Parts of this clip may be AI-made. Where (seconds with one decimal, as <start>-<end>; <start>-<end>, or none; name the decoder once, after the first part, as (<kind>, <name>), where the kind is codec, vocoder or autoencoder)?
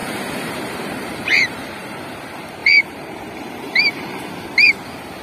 0.0-2.0 (vocoder, BigVGAN v2); 2.6-4.3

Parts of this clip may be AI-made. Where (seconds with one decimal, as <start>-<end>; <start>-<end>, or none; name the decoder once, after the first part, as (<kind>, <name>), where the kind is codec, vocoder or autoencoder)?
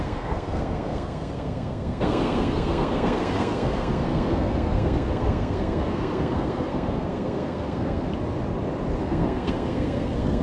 0.0-8.1 (codec, SNAC); 9.0-10.4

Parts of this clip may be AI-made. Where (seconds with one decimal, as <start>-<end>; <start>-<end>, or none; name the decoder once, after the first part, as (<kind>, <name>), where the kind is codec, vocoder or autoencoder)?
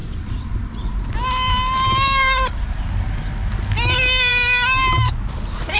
0.0-0.7 (vocoder, BigVGAN v2)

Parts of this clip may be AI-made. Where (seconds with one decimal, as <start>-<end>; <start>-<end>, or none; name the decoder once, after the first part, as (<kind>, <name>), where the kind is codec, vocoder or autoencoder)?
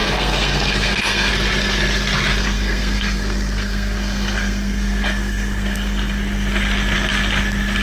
0.0-1.3 (codec, SNAC); 2.4-6.2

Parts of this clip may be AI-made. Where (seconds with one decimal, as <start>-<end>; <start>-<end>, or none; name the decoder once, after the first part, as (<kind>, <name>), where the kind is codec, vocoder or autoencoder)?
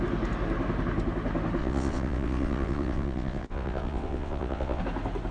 1.6-4.8 (vocoder, WaveNeXt)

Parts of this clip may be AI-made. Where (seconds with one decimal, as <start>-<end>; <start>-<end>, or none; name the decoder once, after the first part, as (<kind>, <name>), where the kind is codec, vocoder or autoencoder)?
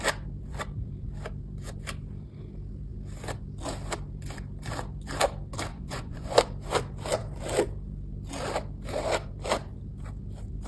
5.7-6.4 (vocoder, Vocos)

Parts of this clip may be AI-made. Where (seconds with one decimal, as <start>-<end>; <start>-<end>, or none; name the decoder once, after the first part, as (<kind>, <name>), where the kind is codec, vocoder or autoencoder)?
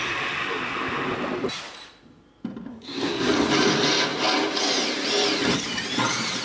2.7-3.3 (codec, SNAC)